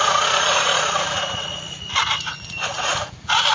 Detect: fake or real fake